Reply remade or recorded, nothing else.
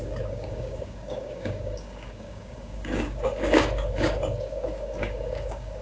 remade